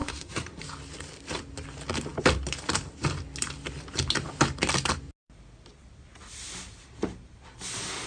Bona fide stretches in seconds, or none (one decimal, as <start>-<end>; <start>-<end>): 0.6-8.1